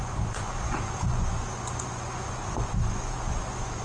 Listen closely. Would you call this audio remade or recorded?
remade